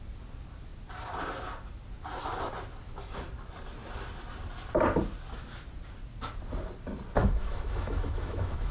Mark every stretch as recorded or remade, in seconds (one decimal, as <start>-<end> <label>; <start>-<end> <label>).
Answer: 0.0-7.2 recorded; 7.2-8.7 remade